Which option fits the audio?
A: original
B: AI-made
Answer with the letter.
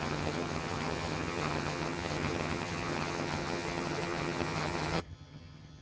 B